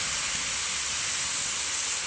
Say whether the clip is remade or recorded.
recorded